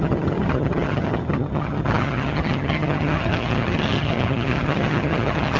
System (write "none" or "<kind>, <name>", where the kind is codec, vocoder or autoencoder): vocoder, HiFi-GAN